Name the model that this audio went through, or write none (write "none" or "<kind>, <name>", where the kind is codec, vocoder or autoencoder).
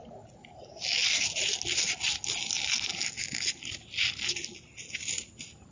none